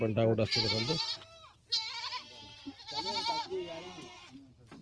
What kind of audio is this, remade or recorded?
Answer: recorded